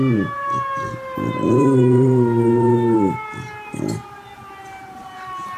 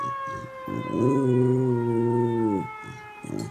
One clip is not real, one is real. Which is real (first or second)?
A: second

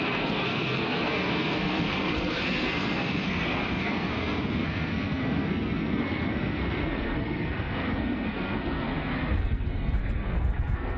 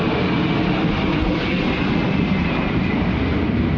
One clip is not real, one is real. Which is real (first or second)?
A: second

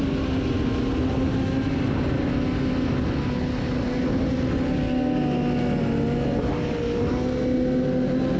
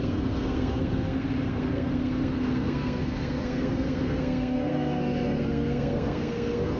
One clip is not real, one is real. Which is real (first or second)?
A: first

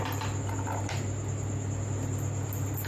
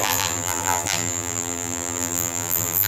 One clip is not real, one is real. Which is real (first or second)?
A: first